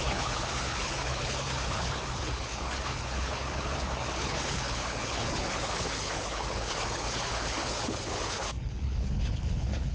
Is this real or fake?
fake